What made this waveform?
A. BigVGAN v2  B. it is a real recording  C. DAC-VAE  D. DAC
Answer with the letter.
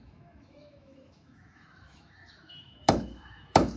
C